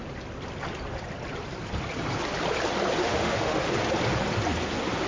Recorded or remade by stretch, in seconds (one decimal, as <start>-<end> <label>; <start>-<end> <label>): 0.0-3.0 recorded; 3.0-3.6 remade; 3.6-5.1 recorded